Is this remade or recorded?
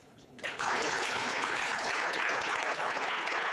remade